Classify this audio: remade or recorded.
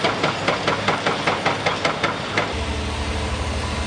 recorded